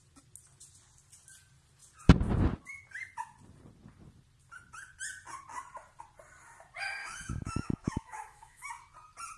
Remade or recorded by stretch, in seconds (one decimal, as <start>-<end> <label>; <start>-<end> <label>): 0.0-7.0 recorded; 7.0-8.7 remade; 8.7-9.4 recorded